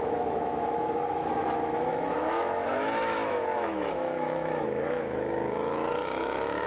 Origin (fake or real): fake